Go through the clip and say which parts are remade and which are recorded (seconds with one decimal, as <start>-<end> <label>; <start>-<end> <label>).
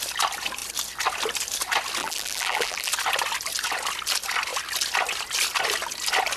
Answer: 0.0-2.0 recorded; 2.0-2.9 remade; 2.9-6.4 recorded